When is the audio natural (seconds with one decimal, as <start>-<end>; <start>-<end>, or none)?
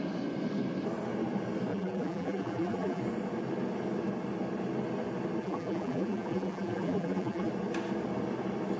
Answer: 0.0-1.7; 3.0-5.4; 7.5-8.8